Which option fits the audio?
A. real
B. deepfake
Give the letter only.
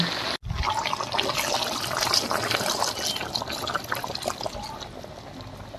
A